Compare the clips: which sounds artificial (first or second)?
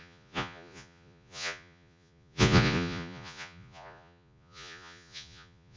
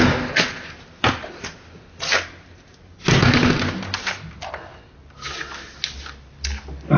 first